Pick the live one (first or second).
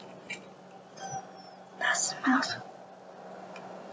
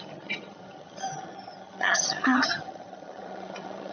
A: first